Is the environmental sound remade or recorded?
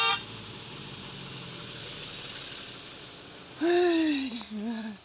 recorded